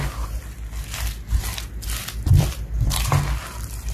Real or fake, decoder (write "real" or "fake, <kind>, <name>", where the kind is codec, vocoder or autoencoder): fake, vocoder, BigVGAN v2